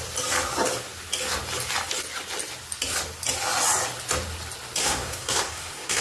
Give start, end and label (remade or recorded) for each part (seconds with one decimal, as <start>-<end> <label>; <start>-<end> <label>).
0.0-4.8 recorded; 4.8-6.0 remade